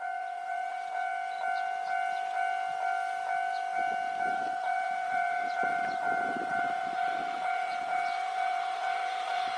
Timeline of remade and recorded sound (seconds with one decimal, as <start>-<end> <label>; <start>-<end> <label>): 0.0-1.1 remade; 1.1-4.2 recorded; 4.2-9.6 remade

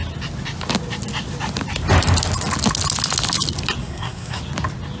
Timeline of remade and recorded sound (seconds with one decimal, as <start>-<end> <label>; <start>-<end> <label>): 0.0-3.8 recorded; 3.8-4.4 remade; 4.4-5.0 recorded

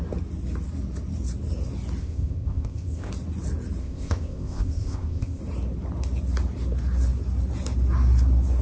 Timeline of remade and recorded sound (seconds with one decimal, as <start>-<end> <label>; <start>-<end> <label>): 0.0-2.0 recorded; 2.0-3.1 remade; 3.1-3.8 recorded; 3.8-5.4 remade; 5.4-8.6 recorded

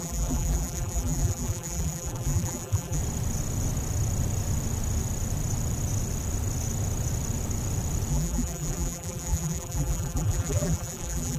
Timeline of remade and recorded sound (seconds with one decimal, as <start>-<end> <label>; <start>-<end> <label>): 0.0-3.0 remade; 3.0-8.1 recorded; 8.1-11.4 remade

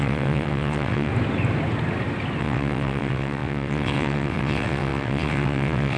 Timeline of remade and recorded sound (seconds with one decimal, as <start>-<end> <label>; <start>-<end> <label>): 0.0-1.1 remade; 1.1-2.4 recorded; 2.4-6.0 remade

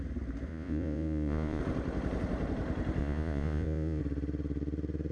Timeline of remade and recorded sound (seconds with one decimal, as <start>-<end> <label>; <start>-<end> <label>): 0.0-0.5 recorded; 0.5-1.6 remade; 1.6-3.0 recorded; 3.0-4.0 remade; 4.0-5.1 recorded